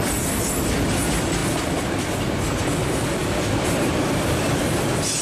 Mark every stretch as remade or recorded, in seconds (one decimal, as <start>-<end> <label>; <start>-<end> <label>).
0.0-5.2 recorded